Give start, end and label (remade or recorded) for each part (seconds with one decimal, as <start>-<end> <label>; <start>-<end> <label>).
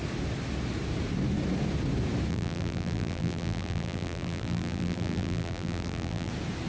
0.0-2.3 recorded; 2.3-6.3 remade; 6.3-6.7 recorded